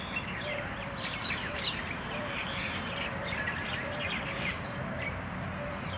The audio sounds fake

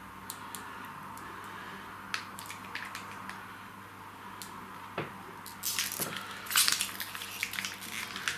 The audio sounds real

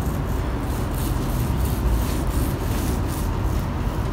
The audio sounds real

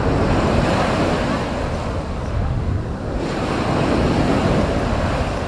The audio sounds real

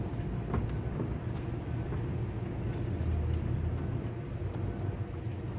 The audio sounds real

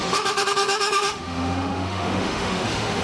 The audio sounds fake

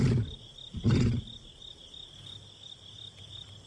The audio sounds real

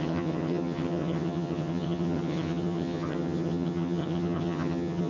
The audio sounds fake